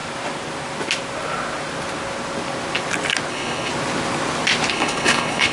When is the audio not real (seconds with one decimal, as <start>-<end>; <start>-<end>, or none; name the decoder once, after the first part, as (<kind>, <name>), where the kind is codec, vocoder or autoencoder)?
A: 3.3-3.7 (codec, HILCodec); 4.7-5.5